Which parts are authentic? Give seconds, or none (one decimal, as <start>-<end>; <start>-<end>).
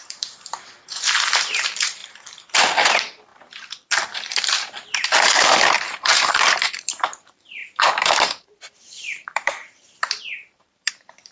3.3-5.3